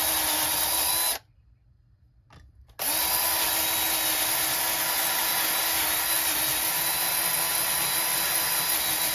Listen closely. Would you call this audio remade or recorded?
recorded